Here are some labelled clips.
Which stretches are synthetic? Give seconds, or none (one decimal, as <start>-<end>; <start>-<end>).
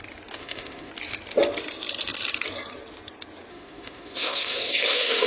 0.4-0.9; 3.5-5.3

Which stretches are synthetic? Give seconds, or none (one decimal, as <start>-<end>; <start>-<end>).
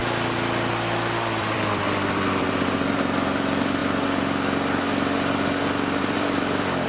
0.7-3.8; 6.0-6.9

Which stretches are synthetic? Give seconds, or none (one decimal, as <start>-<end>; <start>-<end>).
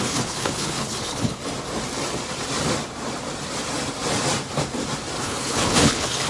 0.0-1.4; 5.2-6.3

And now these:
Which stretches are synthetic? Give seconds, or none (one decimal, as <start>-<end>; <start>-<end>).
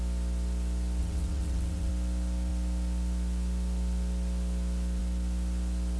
1.0-1.9